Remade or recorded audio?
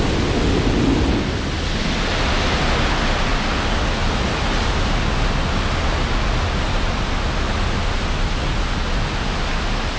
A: recorded